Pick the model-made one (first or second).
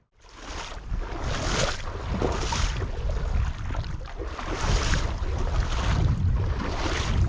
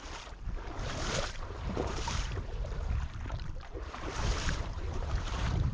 second